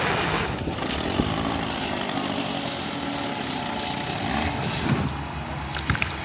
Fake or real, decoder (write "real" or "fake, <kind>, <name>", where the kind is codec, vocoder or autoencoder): real